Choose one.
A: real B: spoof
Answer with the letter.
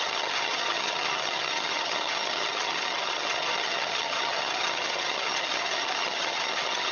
B